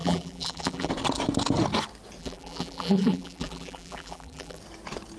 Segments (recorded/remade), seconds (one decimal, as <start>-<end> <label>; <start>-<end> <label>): 0.0-0.9 remade; 0.9-2.2 recorded; 2.2-4.6 remade; 4.6-5.2 recorded

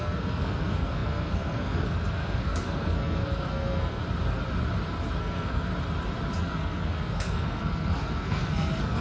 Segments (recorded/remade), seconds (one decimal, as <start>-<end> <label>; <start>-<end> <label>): 0.0-4.0 remade; 4.0-5.2 recorded; 5.2-5.7 remade; 5.7-6.4 recorded; 6.4-9.0 remade

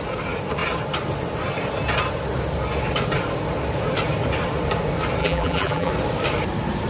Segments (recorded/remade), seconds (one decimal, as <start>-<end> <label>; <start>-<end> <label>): 0.0-5.2 recorded; 5.2-5.9 remade; 5.9-6.9 recorded

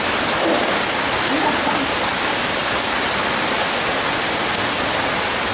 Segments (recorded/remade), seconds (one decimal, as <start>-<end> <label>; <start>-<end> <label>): 0.0-5.5 recorded